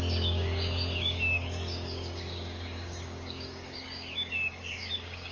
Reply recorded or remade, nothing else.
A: remade